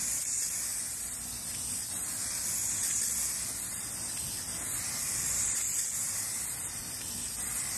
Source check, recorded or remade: recorded